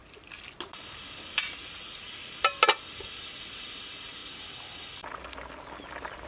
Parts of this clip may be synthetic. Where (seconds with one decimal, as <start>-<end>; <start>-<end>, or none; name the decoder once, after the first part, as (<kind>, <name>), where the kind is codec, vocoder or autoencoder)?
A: none